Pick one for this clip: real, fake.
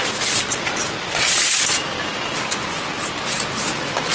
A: real